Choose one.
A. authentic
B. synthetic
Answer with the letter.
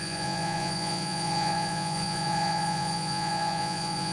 B